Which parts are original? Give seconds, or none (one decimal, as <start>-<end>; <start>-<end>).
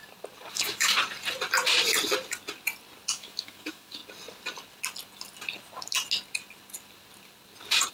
0.0-0.5; 0.9-3.1; 4.0-7.9